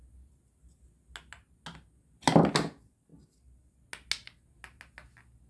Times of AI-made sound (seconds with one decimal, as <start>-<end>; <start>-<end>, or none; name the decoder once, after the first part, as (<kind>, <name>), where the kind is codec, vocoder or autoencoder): none